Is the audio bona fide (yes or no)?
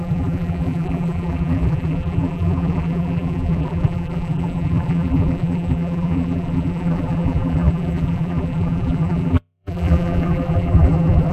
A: no